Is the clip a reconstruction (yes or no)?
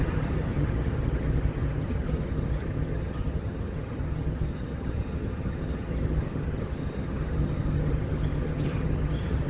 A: yes